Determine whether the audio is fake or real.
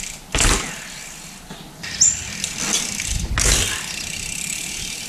real